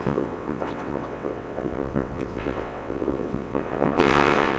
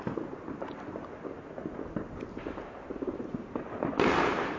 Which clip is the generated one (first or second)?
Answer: first